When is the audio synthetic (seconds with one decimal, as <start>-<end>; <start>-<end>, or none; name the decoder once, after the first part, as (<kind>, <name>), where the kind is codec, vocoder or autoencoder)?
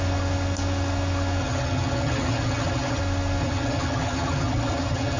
1.4-3.0 (vocoder, HiFi-GAN); 3.4-5.2